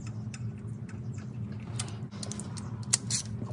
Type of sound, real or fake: real